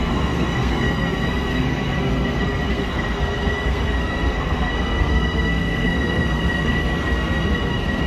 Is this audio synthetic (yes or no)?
yes